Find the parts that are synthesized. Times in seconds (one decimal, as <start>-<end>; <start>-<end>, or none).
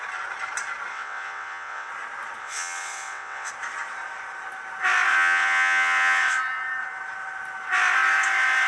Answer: 0.9-1.9; 2.4-3.5; 5.1-6.4